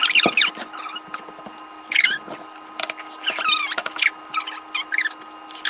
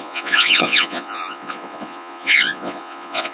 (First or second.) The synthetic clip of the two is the second